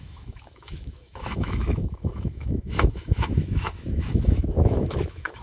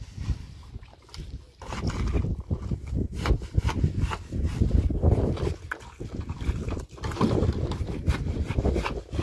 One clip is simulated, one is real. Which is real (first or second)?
second